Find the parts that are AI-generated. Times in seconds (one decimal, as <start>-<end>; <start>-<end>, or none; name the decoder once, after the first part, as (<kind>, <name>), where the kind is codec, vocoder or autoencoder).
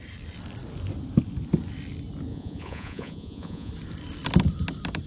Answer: 2.3-3.7 (vocoder, Vocos)